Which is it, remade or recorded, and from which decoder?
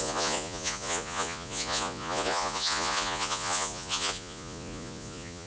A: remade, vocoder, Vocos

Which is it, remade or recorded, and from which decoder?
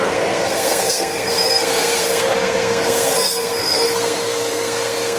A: remade, codec, SNAC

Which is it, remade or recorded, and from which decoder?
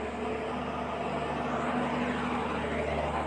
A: recorded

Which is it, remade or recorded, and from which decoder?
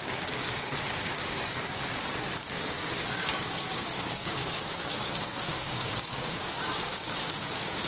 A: remade, codec, DAC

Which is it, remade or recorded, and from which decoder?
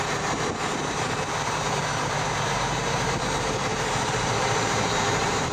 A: remade, vocoder, BigVGAN v2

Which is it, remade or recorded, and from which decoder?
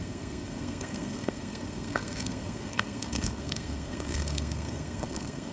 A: remade, codec, SNAC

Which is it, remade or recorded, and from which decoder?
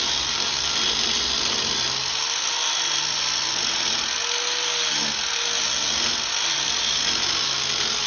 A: recorded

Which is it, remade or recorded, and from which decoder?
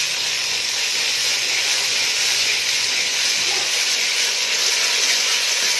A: remade, vocoder, Vocos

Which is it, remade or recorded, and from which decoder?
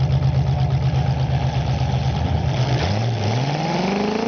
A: recorded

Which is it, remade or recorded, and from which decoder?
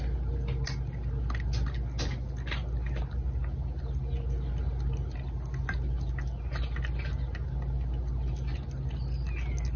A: recorded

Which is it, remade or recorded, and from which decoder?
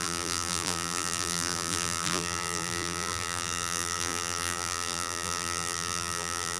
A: remade, vocoder, BigVGAN v2